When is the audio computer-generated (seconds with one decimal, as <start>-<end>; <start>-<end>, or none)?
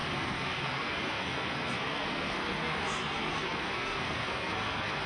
0.0-5.1